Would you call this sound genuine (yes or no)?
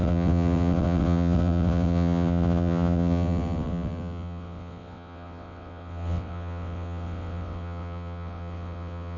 no